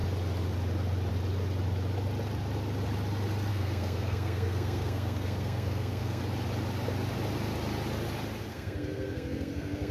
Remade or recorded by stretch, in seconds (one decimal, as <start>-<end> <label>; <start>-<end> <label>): 0.0-3.5 recorded; 3.5-6.2 remade; 6.2-8.5 recorded; 8.5-9.9 remade